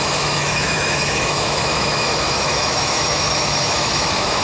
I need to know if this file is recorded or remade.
remade